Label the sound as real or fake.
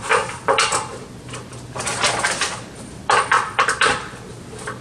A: real